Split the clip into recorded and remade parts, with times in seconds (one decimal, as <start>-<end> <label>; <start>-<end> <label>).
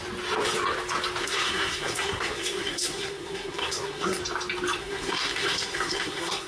0.0-1.2 recorded; 1.2-4.2 remade; 4.2-4.8 recorded; 4.8-6.5 remade